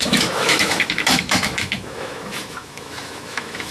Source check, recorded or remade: remade